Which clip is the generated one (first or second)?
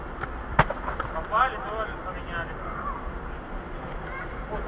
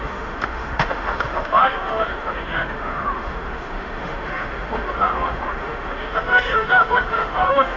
second